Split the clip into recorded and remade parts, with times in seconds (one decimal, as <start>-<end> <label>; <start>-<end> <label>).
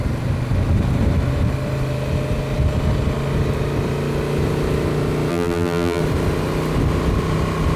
0.0-5.3 recorded; 5.3-6.0 remade; 6.0-7.8 recorded